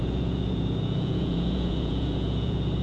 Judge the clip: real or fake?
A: fake